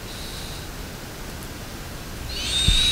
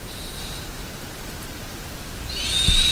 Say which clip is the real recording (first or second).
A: first